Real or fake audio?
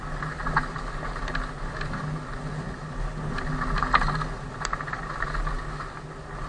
real